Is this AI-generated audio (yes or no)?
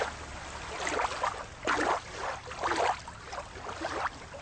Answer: no